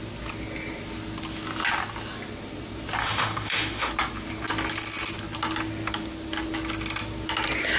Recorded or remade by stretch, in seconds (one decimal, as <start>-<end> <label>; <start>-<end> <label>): 0.0-3.0 recorded; 3.0-3.9 remade; 3.9-7.8 recorded